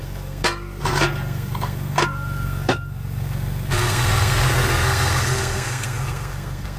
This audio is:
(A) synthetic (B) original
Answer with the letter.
A